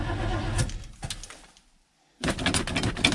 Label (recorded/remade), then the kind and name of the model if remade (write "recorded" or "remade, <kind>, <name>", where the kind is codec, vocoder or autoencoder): recorded